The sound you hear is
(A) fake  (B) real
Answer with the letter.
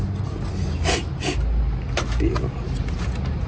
B